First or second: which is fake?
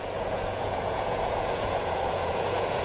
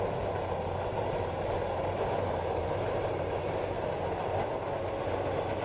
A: first